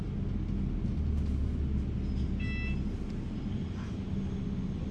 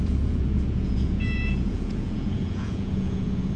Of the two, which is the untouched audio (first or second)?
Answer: first